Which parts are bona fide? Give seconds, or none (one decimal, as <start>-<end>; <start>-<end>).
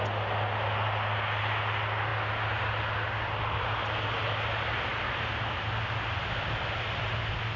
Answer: 0.0-7.6